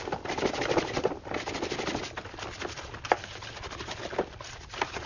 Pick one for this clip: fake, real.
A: real